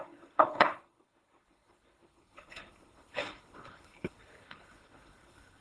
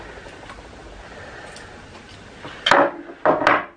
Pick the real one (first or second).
second